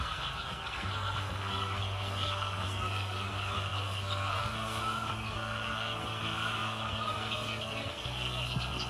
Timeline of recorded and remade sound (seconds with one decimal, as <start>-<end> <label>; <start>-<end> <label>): 0.0-8.9 remade